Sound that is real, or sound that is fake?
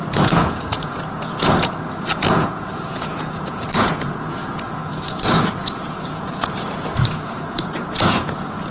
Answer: fake